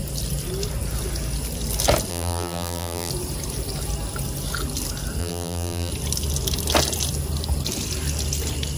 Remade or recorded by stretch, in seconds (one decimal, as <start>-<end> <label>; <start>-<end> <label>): 0.0-2.1 recorded; 2.1-3.1 remade; 3.1-5.2 recorded; 5.2-5.9 remade; 5.9-8.8 recorded